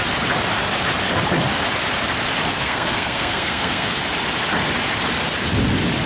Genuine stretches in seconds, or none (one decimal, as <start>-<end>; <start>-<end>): 0.0-2.5; 4.0-6.1